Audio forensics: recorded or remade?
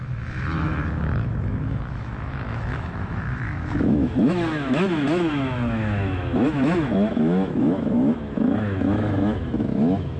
remade